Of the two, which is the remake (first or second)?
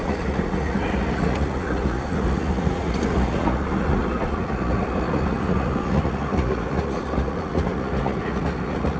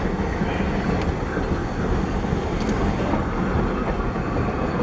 first